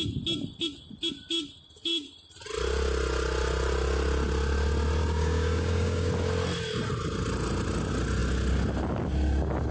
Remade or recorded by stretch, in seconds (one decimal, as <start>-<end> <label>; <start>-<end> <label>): 0.0-5.0 recorded; 5.0-6.1 remade; 6.1-9.7 recorded